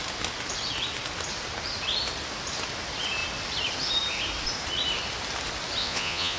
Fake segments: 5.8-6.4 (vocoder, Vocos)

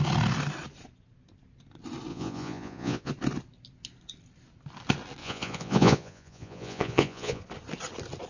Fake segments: 2.1-3.1 (vocoder, Vocos); 5.2-7.4

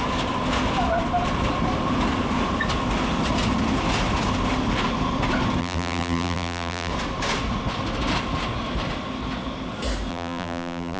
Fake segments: 5.6-6.9 (vocoder, BigVGAN v2); 10.1-11.0

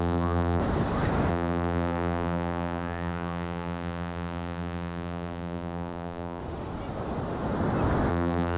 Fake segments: 0.0-0.6 (vocoder, BigVGAN v2); 1.3-6.4; 8.1-8.6

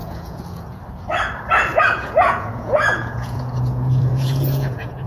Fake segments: 0.0-0.8 (vocoder, Vocos); 1.7-5.1